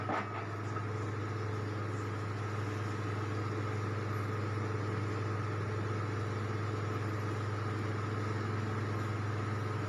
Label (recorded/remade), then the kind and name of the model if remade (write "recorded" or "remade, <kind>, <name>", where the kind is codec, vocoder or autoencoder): recorded